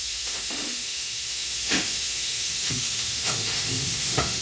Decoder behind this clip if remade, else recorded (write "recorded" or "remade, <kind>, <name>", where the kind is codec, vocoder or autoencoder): remade, autoencoder, DAC-VAE